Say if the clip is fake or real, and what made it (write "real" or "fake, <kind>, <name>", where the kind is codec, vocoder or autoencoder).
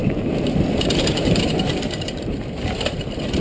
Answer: fake, vocoder, BigVGAN v2